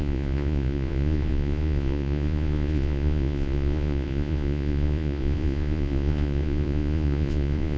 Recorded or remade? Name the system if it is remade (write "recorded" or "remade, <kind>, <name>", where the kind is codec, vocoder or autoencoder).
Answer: remade, vocoder, Vocos